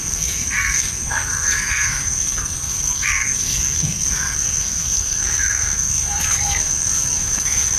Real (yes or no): no